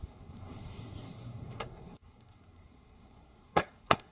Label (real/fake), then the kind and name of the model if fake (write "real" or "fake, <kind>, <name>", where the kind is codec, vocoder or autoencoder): fake, codec, SNAC